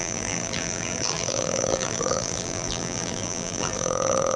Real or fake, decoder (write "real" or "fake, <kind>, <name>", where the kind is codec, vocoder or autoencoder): fake, vocoder, BigVGAN v2